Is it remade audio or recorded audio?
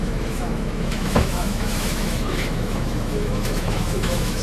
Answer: remade